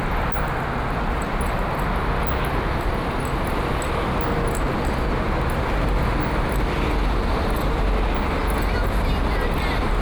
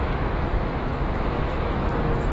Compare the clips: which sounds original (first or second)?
first